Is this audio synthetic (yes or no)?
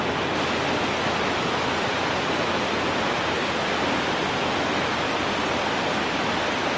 no